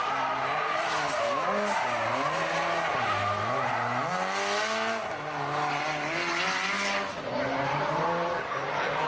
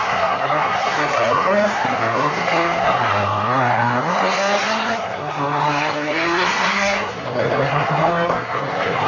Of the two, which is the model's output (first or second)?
second